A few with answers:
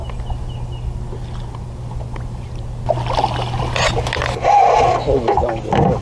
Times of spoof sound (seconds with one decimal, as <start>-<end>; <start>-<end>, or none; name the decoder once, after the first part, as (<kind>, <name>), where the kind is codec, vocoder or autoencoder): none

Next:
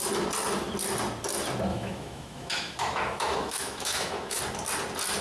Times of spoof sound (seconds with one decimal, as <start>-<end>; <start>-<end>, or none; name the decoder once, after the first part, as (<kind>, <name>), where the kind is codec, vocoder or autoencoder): 1.7-4.4 (autoencoder, DAC-VAE)

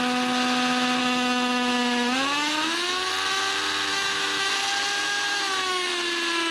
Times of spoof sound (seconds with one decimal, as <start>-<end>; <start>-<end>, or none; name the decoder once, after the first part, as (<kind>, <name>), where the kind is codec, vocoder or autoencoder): 1.0-3.1 (autoencoder, DAC-VAE); 3.9-4.5; 5.3-5.9